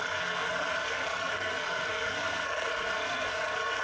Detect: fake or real fake